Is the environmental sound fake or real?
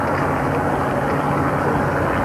real